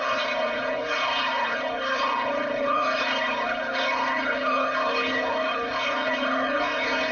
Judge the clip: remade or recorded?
remade